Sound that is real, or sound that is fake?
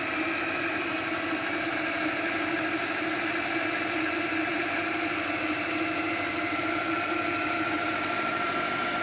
fake